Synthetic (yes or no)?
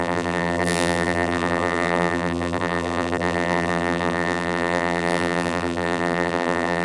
yes